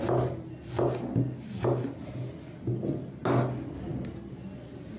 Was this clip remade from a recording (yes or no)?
no